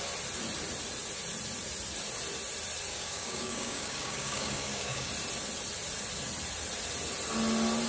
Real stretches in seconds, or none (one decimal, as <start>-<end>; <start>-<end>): 0.0-2.9; 5.1-7.9